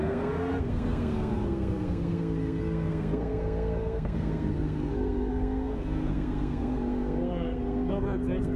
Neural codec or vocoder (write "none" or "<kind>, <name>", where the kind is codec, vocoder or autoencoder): codec, SNAC